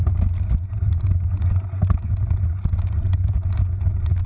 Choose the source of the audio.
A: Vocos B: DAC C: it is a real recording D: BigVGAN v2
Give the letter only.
C